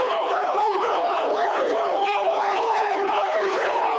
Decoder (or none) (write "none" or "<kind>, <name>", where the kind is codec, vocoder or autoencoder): codec, HILCodec